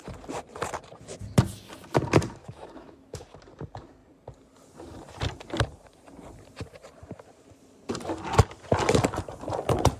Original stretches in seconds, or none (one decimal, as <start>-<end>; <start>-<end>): 0.0-2.4; 3.2-10.0

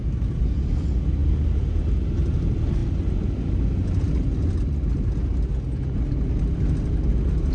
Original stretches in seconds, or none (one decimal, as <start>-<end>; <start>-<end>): 0.0-7.5

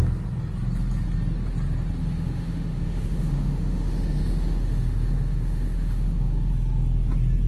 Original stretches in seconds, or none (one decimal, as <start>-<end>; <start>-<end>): 0.0-2.0; 6.5-7.5

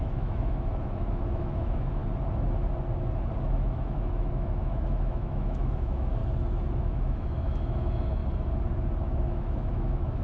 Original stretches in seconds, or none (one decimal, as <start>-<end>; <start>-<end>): 2.0-3.4; 6.2-6.8; 8.2-9.0

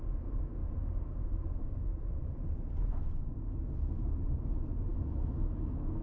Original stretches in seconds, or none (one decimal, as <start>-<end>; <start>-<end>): 0.0-4.9

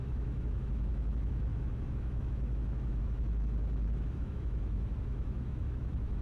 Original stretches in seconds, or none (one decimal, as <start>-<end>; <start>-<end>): none

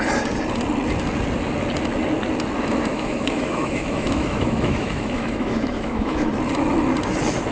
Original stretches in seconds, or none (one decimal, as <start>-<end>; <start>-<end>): 0.0-2.9; 6.3-7.5

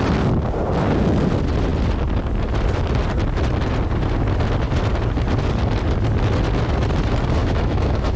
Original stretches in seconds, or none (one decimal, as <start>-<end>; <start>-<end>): 0.0-7.4